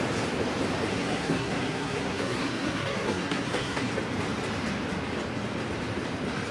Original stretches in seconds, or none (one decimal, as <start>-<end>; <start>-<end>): 0.0-0.9; 3.9-6.5